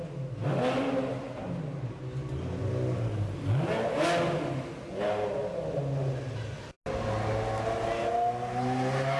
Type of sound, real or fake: real